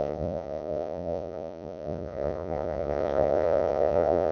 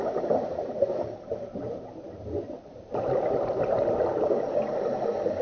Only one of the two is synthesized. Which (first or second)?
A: first